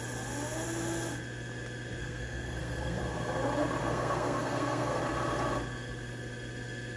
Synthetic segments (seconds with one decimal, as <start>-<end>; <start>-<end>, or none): 2.0-3.0; 3.8-5.0